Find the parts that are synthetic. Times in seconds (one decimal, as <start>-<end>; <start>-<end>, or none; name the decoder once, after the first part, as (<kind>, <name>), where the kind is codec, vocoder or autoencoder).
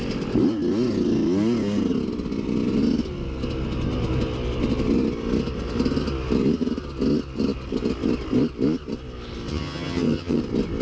9.5-10.4 (vocoder, HiFi-GAN)